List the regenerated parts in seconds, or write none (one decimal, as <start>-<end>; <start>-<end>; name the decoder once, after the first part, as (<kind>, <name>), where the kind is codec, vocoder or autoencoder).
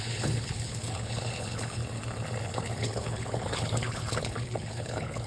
0.0-1.8 (codec, HILCodec); 2.4-5.3